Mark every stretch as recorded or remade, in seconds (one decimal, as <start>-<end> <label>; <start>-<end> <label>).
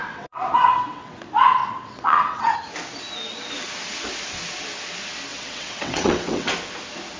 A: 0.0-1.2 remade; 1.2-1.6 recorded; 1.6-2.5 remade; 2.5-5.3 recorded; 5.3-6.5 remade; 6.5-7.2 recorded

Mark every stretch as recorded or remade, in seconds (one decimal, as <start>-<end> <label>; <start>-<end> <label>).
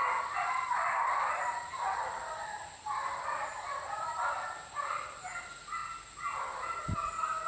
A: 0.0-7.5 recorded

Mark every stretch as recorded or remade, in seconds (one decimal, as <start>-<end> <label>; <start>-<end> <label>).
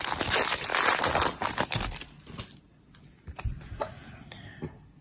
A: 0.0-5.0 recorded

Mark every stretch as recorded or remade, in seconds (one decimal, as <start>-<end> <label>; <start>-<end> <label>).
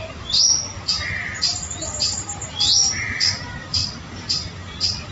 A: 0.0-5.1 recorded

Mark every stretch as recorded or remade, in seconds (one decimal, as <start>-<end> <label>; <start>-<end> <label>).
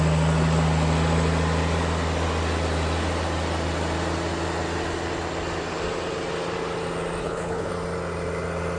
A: 0.0-7.2 recorded; 7.2-7.7 remade; 7.7-8.8 recorded